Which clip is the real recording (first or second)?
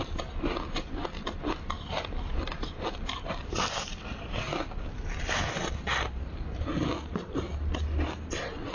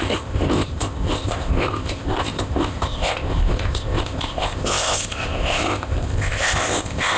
first